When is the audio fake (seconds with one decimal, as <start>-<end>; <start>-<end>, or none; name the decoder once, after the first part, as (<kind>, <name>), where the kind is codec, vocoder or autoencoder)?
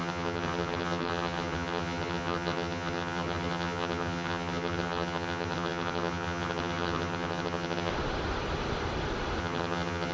0.0-7.9 (vocoder, HiFi-GAN); 9.4-10.1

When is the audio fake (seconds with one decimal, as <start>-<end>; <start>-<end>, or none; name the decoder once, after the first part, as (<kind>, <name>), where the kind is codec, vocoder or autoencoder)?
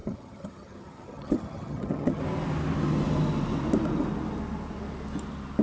0.0-2.2 (vocoder, HiFi-GAN)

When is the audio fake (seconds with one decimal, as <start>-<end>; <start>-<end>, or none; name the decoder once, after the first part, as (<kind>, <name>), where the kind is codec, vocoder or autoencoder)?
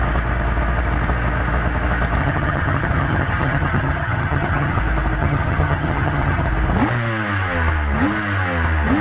2.2-4.8 (vocoder, HiFi-GAN); 5.2-6.5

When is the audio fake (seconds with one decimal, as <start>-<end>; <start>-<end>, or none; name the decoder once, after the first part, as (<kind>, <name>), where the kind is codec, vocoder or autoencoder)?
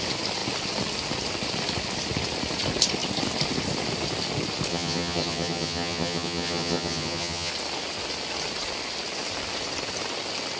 4.7-7.5 (vocoder, HiFi-GAN)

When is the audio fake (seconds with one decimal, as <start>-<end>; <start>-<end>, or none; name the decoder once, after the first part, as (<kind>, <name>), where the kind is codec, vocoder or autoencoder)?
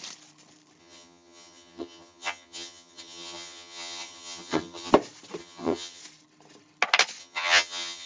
0.8-4.9 (vocoder, HiFi-GAN); 5.4-6.0; 7.2-8.1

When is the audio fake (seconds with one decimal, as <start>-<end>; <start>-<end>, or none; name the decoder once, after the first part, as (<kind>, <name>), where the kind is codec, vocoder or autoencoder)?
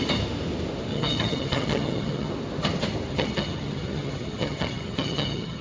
0.9-2.3 (vocoder, HiFi-GAN); 3.1-5.6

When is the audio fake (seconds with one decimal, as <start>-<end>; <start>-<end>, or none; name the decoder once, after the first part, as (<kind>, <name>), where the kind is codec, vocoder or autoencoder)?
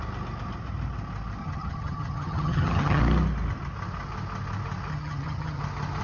1.4-3.0 (vocoder, HiFi-GAN); 4.9-5.6